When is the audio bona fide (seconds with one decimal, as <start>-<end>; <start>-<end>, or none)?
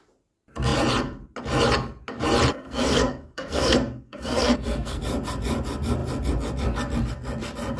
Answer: 0.0-2.5; 5.0-7.8